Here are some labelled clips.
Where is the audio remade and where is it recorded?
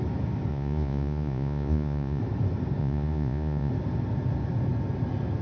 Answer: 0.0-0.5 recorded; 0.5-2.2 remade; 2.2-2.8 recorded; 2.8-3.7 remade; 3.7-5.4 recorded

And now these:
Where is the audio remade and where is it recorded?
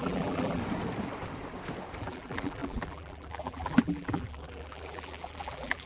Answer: 0.0-0.6 remade; 0.6-2.0 recorded; 2.0-5.9 remade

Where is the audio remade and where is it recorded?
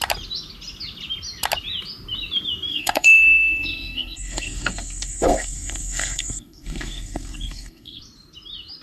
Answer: 0.0-2.7 recorded; 2.7-8.0 remade; 8.0-8.8 recorded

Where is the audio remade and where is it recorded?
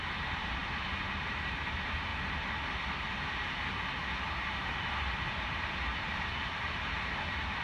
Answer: 0.0-2.1 remade; 2.1-3.2 recorded; 3.2-4.0 remade; 4.0-4.6 recorded; 4.6-7.6 remade